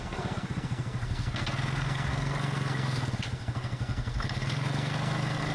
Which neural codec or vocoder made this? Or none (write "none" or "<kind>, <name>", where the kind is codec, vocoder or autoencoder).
codec, SNAC